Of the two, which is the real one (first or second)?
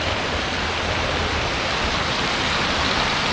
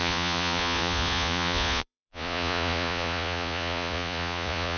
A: first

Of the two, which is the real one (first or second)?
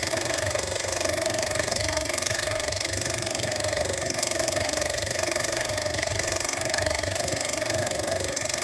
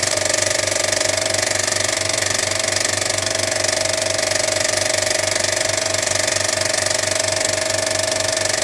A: second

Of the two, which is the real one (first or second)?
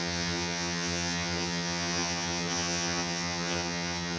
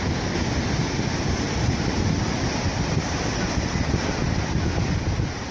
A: second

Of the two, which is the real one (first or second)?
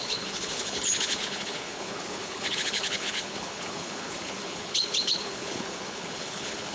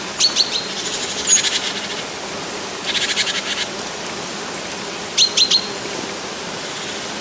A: second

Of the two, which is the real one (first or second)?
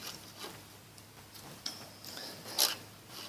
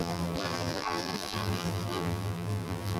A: first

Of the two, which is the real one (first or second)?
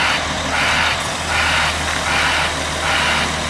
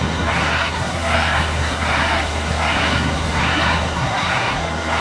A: first